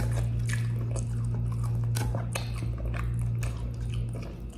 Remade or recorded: recorded